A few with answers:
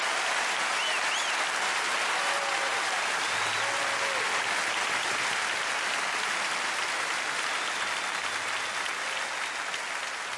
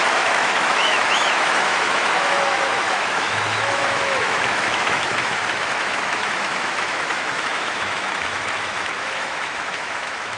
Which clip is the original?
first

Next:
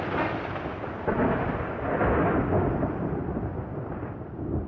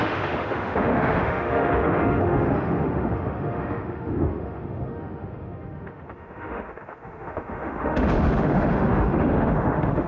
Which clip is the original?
first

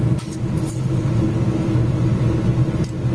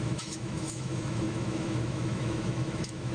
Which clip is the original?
first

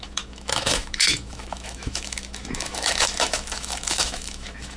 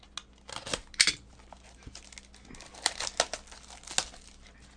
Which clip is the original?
second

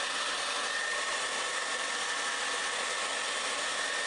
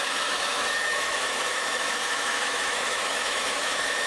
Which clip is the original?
first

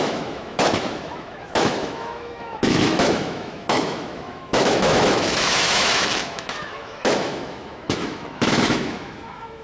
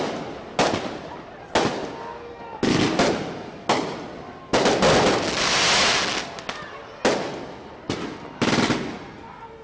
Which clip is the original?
second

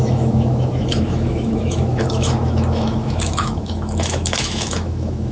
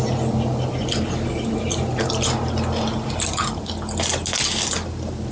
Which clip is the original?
second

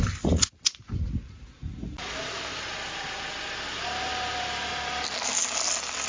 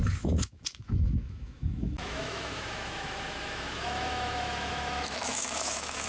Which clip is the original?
first